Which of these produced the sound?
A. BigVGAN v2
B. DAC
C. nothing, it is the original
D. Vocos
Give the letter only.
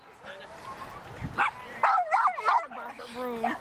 C